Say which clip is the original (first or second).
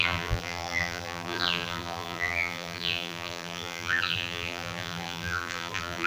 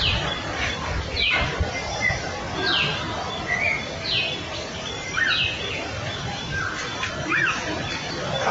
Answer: second